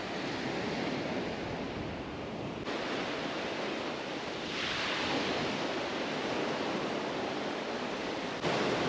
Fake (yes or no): no